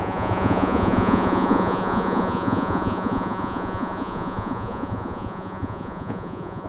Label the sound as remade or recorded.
remade